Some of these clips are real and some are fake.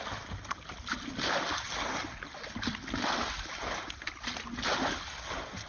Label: real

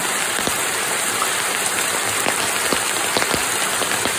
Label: real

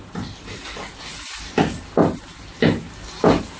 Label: real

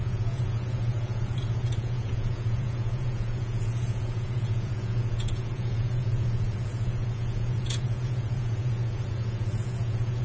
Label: fake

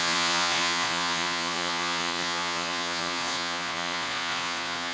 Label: fake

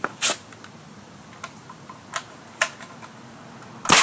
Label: real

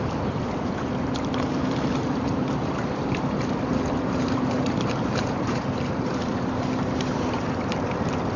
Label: fake